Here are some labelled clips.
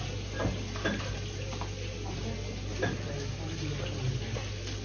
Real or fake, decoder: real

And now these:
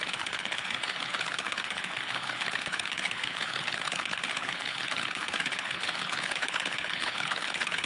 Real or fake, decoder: fake, codec, HILCodec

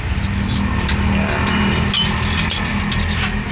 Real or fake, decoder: real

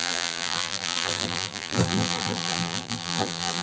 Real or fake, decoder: fake, vocoder, BigVGAN v2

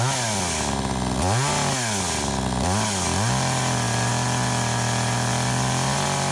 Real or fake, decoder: real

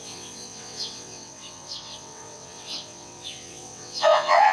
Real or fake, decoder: fake, vocoder, WaveNeXt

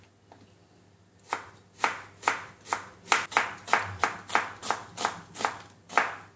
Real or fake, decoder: real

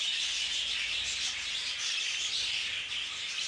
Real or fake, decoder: real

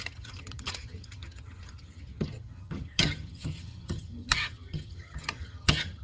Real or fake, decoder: fake, vocoder, HiFi-GAN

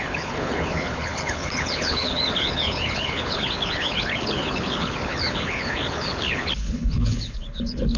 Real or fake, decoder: fake, codec, HILCodec